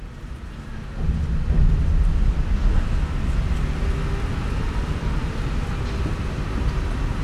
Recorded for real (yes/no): yes